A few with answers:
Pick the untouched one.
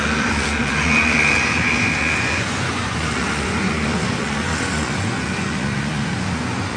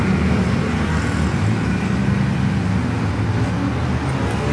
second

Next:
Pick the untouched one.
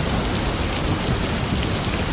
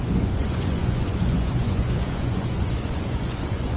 first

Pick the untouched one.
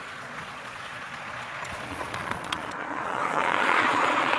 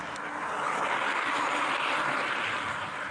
second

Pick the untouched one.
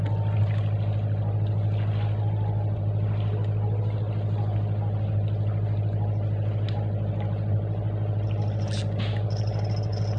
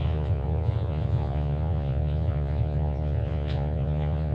first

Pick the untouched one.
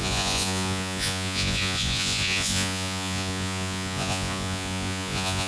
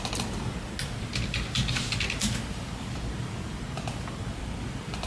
second